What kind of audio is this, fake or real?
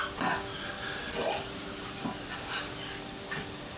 real